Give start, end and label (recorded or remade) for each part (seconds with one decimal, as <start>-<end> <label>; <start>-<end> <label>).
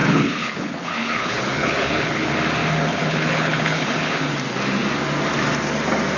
0.0-2.3 remade; 2.3-2.9 recorded; 2.9-4.2 remade; 4.2-6.2 recorded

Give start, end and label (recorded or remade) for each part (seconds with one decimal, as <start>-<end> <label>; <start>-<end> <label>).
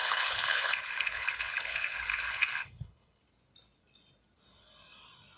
0.0-3.2 remade; 3.2-5.4 recorded